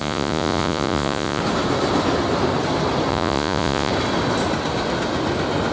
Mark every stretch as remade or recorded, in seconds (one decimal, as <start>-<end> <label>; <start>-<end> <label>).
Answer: 0.0-1.4 remade; 1.4-3.1 recorded; 3.1-3.9 remade; 3.9-5.7 recorded